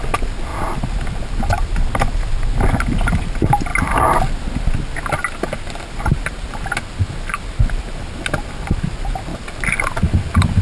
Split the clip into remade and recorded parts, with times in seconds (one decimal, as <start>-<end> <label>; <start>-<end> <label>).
0.0-10.6 recorded